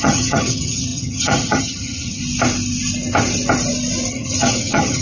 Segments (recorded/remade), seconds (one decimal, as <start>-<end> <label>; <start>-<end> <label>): 0.0-2.2 remade; 2.2-4.1 recorded; 4.1-5.0 remade